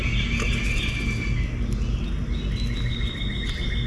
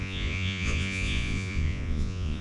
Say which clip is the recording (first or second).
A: first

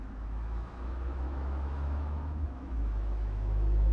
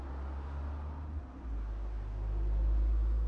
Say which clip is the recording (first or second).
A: second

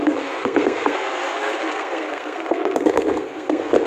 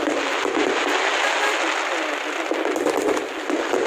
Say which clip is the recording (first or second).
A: second